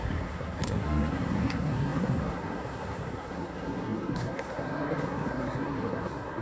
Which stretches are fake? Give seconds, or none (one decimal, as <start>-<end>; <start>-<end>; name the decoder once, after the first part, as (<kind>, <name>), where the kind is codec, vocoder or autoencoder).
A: 0.0-6.4 (codec, SNAC)